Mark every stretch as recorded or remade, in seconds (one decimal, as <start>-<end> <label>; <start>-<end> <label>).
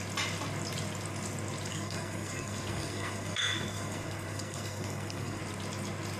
0.0-1.7 recorded; 1.7-5.4 remade; 5.4-6.2 recorded